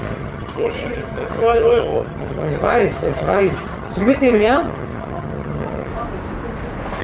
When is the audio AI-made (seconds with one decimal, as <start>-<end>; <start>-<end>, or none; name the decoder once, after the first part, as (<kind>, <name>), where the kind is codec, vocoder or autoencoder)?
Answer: 0.0-5.9 (vocoder, HiFi-GAN)